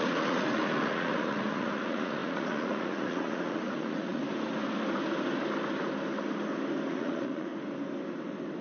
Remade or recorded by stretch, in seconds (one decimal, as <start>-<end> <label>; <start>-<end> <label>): 0.0-4.2 remade; 4.2-6.9 recorded; 6.9-7.5 remade; 7.5-8.6 recorded